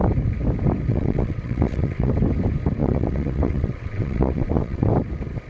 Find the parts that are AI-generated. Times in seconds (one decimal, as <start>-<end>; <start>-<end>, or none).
0.9-2.1; 2.8-4.9

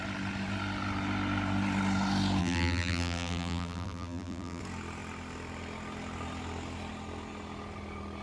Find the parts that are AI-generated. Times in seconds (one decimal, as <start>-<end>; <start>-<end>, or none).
2.4-4.6